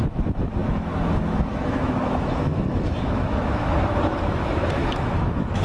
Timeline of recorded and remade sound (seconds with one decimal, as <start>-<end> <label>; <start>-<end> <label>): 0.0-5.6 remade